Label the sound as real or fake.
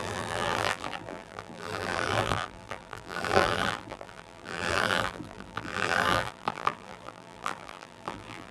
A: fake